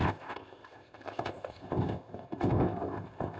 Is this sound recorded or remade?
remade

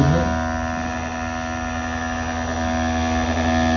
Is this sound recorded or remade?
recorded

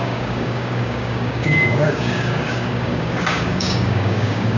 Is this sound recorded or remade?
remade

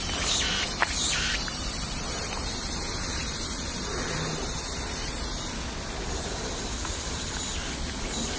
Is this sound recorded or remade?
recorded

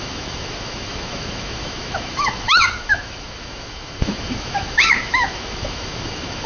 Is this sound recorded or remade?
remade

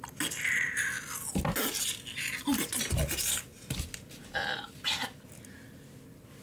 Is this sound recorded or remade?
recorded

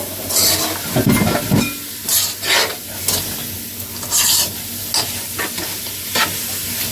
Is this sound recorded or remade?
recorded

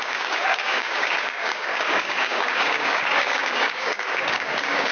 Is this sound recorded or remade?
remade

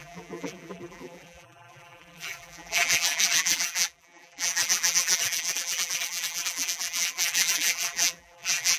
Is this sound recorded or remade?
remade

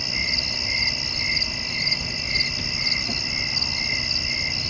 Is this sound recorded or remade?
recorded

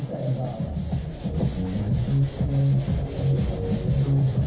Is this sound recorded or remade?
recorded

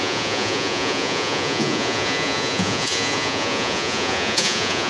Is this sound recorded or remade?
remade